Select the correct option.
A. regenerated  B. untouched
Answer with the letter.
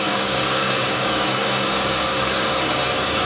A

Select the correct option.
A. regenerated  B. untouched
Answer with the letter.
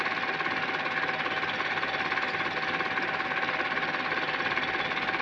B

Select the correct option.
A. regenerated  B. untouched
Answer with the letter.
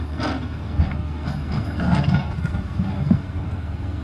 A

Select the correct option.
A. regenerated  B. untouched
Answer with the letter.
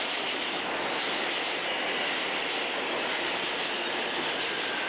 B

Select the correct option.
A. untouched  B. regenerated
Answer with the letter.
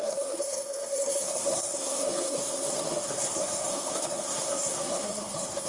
B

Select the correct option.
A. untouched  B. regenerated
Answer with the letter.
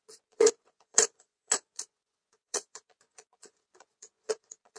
B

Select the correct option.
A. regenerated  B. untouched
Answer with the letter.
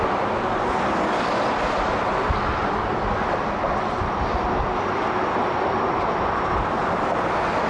B